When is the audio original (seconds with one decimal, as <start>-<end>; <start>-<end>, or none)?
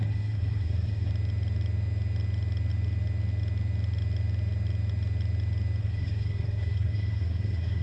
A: 1.1-5.8